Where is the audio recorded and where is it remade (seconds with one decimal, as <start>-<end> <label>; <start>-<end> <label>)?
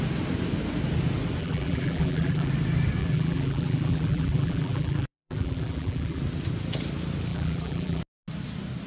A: 0.0-1.4 recorded; 1.4-2.5 remade; 2.5-3.0 recorded; 3.0-6.2 remade; 6.2-7.3 recorded; 7.3-8.0 remade; 8.0-8.9 recorded